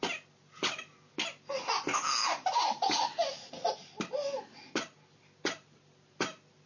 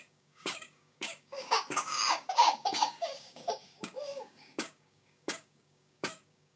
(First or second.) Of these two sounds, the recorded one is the first